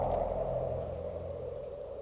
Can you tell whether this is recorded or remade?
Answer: remade